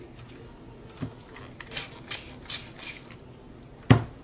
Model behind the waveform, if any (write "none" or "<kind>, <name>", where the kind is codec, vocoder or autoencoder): none